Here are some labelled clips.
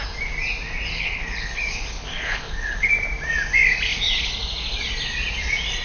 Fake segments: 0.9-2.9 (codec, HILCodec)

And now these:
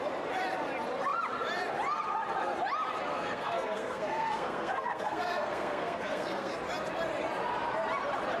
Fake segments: 3.1-6.5 (codec, SNAC)